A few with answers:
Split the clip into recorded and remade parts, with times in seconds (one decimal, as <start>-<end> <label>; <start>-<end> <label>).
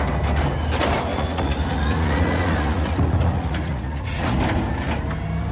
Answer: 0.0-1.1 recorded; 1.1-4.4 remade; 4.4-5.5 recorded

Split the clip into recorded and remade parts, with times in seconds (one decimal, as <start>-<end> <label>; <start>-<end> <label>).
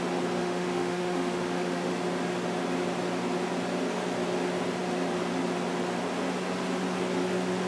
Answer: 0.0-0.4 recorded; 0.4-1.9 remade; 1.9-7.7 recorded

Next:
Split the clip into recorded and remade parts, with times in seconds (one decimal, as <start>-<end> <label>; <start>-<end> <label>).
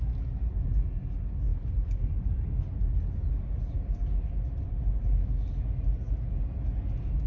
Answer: 0.0-7.3 recorded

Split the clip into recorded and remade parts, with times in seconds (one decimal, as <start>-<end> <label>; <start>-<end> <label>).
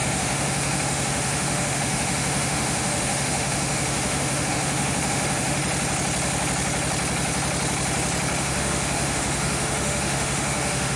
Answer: 0.0-5.6 remade; 5.6-8.4 recorded; 8.4-11.0 remade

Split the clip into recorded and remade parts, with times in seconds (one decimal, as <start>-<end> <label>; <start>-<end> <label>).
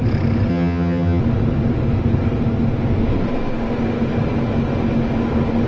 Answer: 0.0-0.5 recorded; 0.5-1.2 remade; 1.2-5.7 recorded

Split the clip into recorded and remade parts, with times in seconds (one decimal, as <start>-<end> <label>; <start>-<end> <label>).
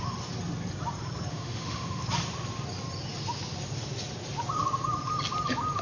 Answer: 0.0-1.3 recorded; 1.3-2.0 remade; 2.0-5.8 recorded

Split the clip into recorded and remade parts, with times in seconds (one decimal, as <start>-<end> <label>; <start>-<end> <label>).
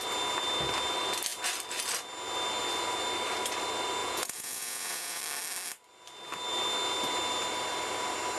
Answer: 0.0-4.0 recorded; 4.0-5.2 remade; 5.2-8.4 recorded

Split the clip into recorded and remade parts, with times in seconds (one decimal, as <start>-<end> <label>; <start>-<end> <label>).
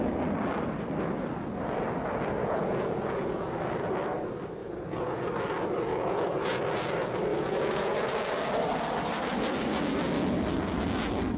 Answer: 0.0-2.4 recorded; 2.4-3.5 remade; 3.5-4.6 recorded; 4.6-5.3 remade; 5.3-5.9 recorded; 5.9-6.6 remade; 6.6-7.3 recorded; 7.3-8.1 remade; 8.1-11.4 recorded